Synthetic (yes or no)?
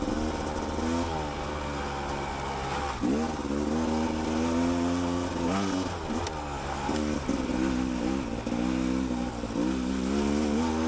no